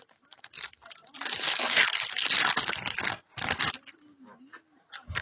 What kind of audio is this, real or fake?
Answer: real